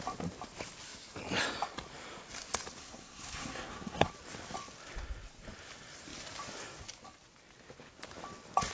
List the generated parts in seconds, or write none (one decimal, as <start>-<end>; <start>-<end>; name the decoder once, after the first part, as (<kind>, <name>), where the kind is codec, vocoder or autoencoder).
2.8-4.1 (codec, SNAC)